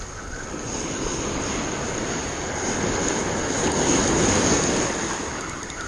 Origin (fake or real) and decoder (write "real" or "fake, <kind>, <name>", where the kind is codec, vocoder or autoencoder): real